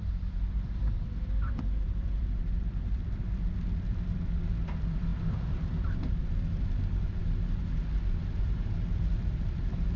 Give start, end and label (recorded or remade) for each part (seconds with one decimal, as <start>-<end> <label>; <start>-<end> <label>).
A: 0.0-7.2 remade; 7.2-8.4 recorded; 8.4-10.0 remade